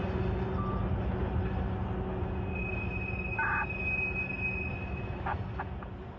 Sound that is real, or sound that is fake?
real